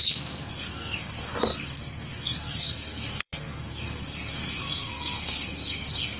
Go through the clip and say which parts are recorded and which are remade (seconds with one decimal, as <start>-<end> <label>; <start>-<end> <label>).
0.0-6.2 remade